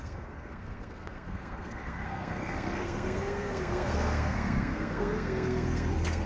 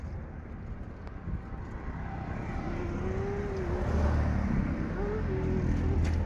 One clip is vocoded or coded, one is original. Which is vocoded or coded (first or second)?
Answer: first